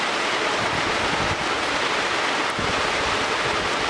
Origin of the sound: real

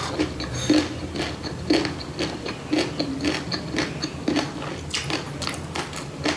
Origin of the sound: real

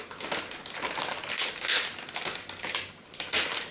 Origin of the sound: real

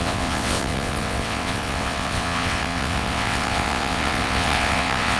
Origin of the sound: fake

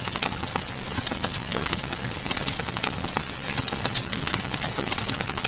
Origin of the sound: fake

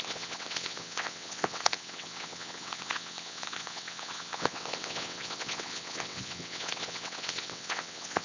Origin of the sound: fake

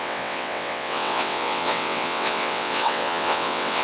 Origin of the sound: fake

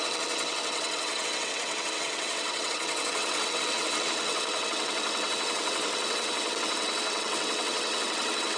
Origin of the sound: fake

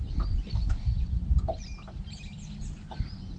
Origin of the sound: real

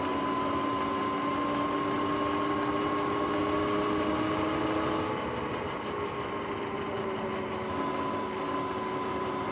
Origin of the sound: real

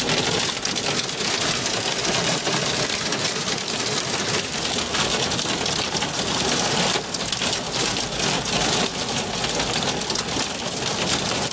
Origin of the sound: real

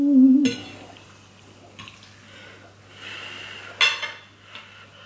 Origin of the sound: real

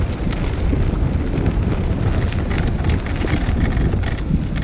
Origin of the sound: real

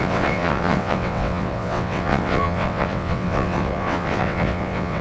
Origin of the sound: fake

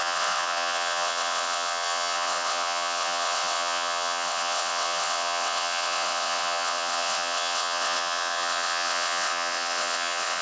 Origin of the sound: fake